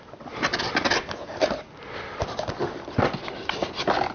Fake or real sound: real